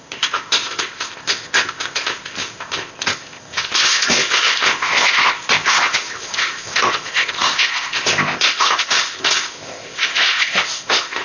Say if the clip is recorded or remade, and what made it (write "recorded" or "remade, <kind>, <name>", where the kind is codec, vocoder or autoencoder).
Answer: remade, codec, ZipCodec